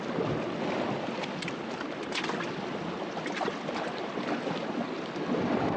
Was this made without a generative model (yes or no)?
yes